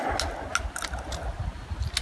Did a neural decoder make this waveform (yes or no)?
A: no